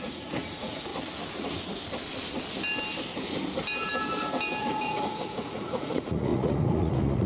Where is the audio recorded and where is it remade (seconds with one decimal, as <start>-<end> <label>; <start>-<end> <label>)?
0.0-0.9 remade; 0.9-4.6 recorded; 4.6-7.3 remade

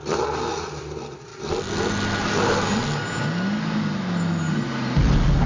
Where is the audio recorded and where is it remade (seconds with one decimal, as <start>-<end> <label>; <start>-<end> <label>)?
0.0-5.5 recorded

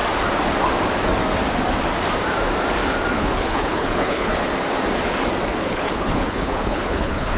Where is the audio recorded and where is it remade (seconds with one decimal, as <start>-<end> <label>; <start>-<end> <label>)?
0.0-3.1 recorded; 3.1-4.3 remade; 4.3-5.5 recorded; 5.5-7.4 remade